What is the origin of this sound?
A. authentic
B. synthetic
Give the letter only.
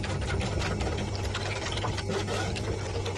A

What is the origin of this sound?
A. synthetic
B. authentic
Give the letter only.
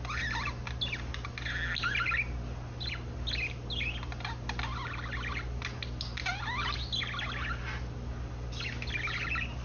B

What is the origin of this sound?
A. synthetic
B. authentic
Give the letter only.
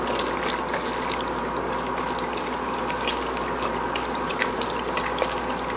B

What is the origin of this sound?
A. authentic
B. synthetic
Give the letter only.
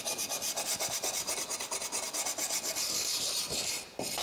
A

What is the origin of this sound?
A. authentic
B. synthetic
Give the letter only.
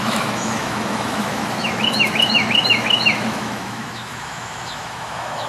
B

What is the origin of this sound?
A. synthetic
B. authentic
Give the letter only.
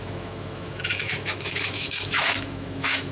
A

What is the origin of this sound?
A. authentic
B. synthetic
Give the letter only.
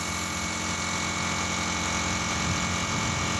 A